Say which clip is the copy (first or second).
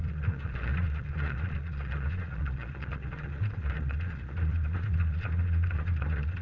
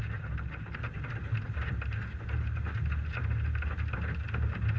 first